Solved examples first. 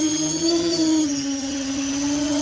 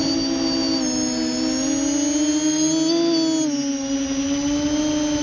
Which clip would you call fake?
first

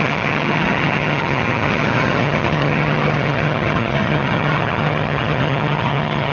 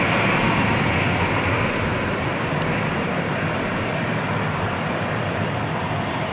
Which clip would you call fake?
first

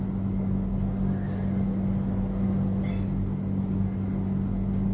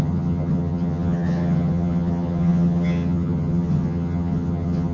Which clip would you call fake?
second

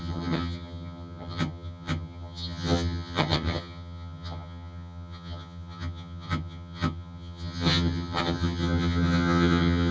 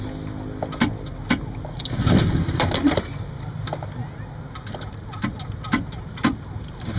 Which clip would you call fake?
first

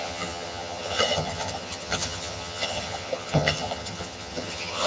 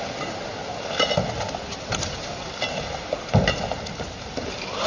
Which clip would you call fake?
first